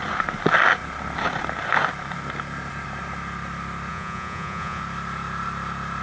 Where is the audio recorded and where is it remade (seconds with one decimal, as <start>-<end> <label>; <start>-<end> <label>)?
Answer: 0.0-3.9 recorded; 3.9-4.8 remade; 4.8-6.0 recorded